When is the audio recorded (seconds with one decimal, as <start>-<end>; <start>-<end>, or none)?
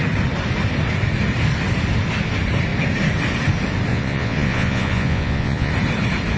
0.0-3.9; 5.7-6.4